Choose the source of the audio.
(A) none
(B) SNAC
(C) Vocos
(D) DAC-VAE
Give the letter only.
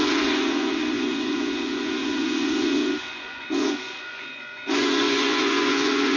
C